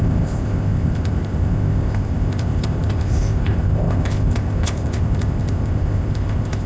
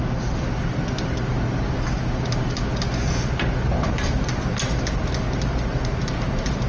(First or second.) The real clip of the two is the second